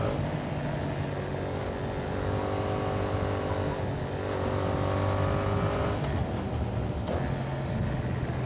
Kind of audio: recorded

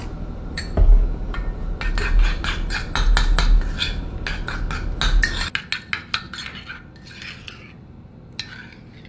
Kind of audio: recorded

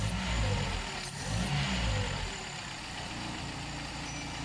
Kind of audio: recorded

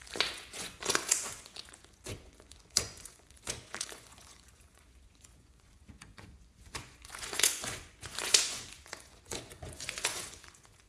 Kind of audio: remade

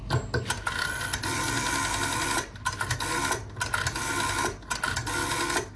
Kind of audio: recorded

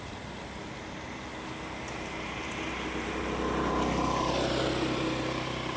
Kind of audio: recorded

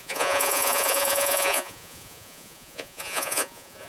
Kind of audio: remade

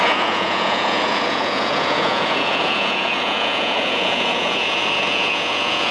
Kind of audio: remade